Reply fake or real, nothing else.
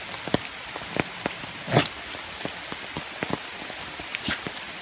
real